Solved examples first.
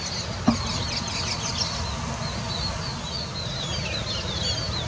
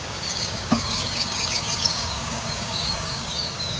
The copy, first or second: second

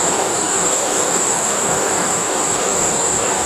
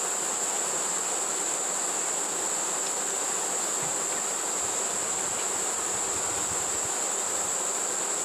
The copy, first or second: first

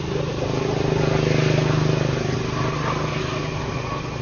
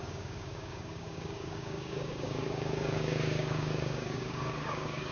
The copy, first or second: second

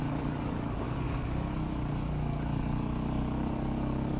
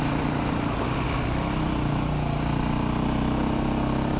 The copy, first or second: first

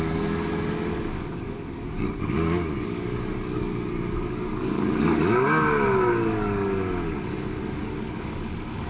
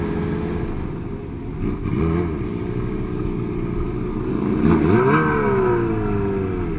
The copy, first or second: first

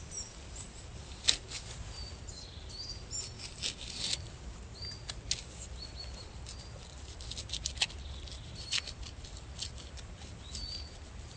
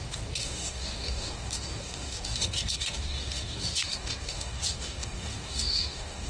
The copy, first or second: second